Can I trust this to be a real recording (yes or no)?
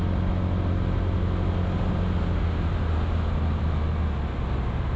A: yes